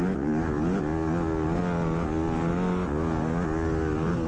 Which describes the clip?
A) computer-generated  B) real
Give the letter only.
B